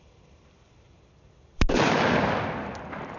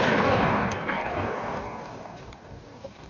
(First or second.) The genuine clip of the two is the first